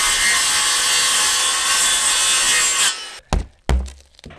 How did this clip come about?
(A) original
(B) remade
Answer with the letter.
A